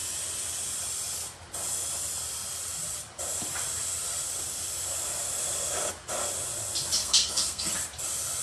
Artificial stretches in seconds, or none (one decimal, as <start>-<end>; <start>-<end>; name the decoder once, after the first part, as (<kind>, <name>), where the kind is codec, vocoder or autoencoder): 7.0-7.7 (codec, SNAC)